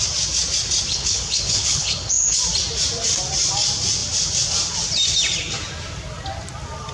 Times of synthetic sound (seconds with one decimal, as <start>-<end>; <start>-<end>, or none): 0.9-2.4